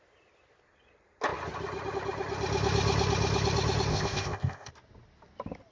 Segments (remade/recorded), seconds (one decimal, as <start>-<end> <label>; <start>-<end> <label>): 0.0-3.9 recorded; 3.9-4.7 remade; 4.7-5.7 recorded